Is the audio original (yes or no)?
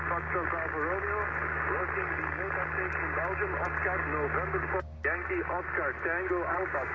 yes